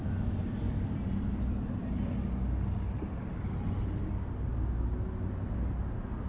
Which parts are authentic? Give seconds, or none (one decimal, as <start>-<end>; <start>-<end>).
0.0-6.3